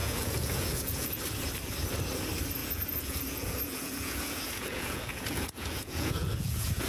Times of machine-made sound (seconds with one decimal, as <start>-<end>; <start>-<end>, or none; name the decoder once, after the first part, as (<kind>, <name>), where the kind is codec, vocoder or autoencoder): 0.0-1.2 (vocoder, Vocos); 2.6-6.9